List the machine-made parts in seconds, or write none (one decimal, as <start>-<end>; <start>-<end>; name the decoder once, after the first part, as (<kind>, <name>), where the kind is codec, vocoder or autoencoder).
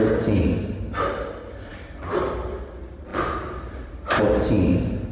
none